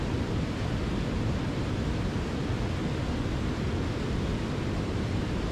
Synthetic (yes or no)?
yes